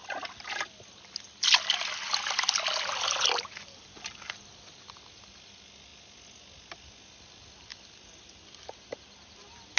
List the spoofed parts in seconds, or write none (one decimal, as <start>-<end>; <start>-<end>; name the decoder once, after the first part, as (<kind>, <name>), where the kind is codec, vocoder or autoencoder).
none